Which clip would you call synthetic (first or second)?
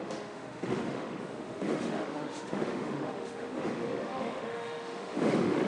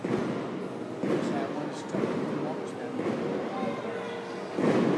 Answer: first